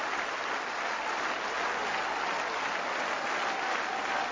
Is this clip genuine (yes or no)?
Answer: yes